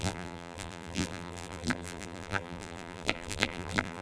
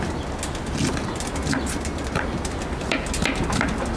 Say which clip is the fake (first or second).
first